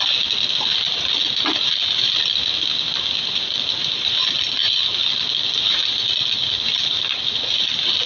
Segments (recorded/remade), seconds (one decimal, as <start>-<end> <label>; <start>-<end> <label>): 0.0-8.1 recorded